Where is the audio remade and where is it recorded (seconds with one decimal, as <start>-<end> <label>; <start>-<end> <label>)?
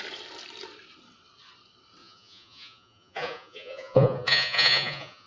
0.0-2.0 recorded; 2.0-5.3 remade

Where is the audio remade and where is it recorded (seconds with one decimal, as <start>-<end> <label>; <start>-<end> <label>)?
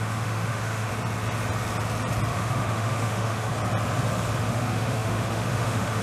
0.0-0.9 remade; 0.9-2.3 recorded; 2.3-3.5 remade; 3.5-4.4 recorded; 4.4-6.0 remade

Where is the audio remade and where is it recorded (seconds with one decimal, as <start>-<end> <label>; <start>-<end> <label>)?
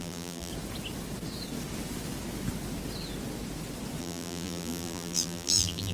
0.0-0.5 remade; 0.5-4.0 recorded; 4.0-5.9 remade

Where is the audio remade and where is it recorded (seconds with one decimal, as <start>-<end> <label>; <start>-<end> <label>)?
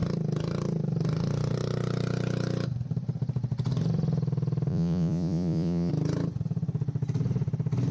0.0-4.7 recorded; 4.7-5.9 remade; 5.9-7.9 recorded